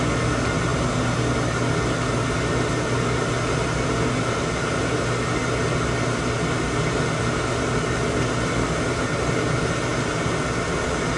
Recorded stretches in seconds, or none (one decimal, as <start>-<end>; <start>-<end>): 0.0-11.2